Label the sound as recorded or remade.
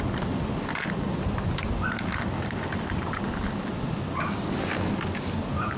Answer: recorded